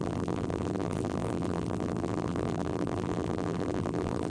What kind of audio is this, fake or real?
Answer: fake